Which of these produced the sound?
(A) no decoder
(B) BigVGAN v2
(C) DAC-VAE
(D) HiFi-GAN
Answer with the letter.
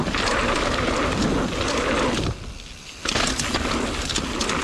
A